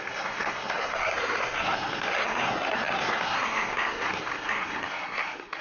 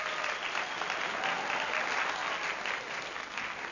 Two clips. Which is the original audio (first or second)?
second